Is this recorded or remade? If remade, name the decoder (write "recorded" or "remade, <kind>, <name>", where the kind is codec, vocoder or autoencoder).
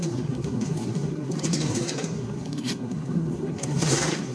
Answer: remade, codec, SNAC